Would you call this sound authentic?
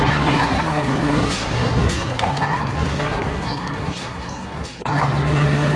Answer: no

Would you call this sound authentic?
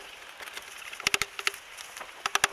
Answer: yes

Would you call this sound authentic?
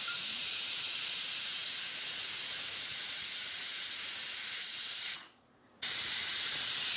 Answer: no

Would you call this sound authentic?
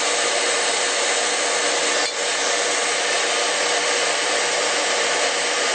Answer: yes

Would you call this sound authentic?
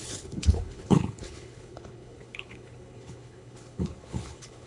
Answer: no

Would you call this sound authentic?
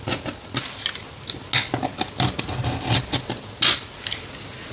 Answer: yes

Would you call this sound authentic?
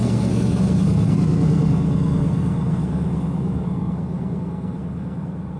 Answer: no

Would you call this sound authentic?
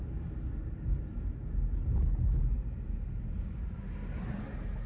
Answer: yes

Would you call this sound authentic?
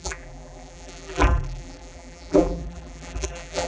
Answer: no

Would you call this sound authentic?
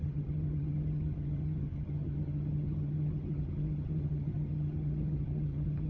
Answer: no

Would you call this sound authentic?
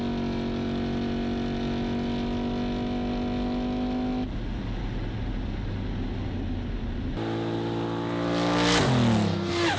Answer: yes